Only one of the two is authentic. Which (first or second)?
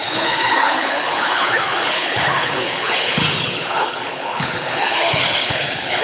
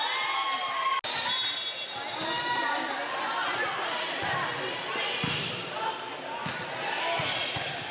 second